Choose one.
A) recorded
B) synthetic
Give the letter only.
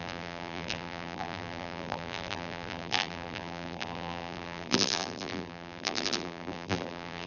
B